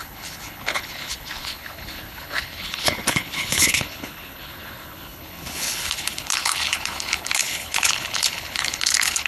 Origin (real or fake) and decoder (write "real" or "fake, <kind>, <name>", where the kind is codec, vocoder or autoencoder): fake, codec, HILCodec